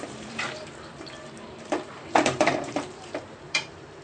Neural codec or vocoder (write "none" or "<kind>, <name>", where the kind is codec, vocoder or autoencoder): vocoder, BigVGAN v2